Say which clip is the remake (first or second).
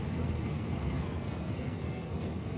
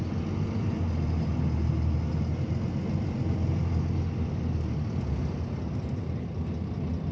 first